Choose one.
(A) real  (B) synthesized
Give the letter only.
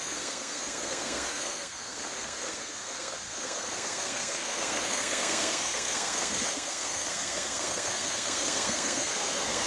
B